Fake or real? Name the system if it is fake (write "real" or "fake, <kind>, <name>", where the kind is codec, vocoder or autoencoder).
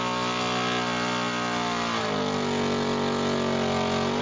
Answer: real